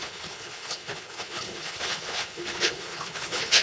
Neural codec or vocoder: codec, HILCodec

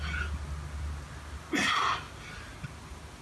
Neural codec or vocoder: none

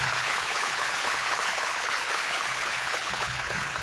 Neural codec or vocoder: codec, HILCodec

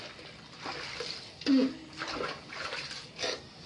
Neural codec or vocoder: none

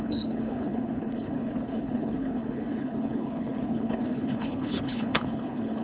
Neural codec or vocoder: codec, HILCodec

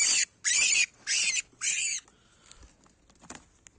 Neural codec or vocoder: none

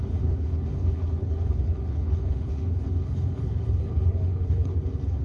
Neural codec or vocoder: codec, HILCodec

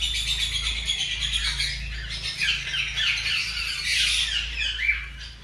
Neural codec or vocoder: none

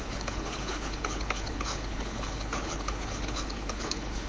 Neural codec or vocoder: codec, HILCodec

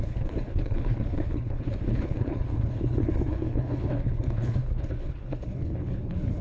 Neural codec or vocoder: codec, HILCodec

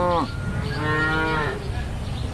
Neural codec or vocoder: none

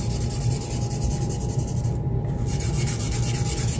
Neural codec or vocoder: none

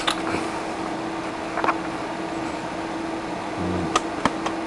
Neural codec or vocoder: none